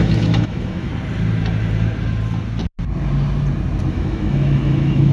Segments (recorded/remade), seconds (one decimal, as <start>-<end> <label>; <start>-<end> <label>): 0.0-0.9 remade; 0.9-3.9 recorded; 3.9-5.1 remade